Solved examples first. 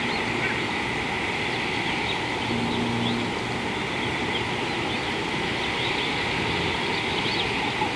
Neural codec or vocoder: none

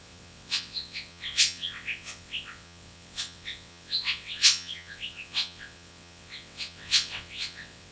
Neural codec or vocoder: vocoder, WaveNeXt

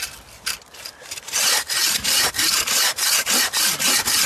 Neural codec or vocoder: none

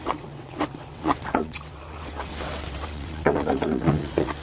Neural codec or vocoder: vocoder, WaveNeXt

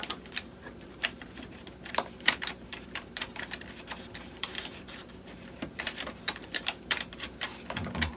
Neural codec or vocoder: vocoder, BigVGAN v2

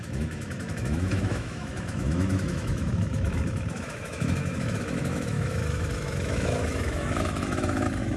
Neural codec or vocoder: autoencoder, DAC-VAE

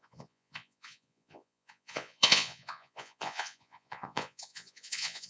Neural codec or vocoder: vocoder, Vocos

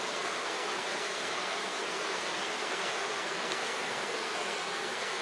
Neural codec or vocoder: codec, SNAC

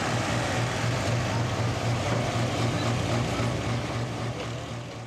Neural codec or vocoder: none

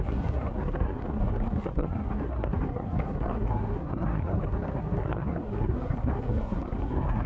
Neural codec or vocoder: codec, SNAC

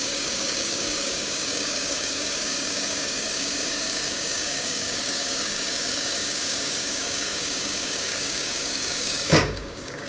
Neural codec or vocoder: codec, DAC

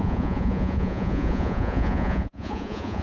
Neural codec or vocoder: vocoder, Vocos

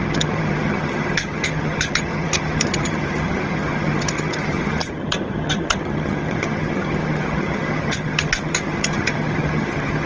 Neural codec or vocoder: vocoder, HiFi-GAN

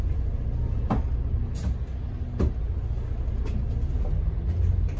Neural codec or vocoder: none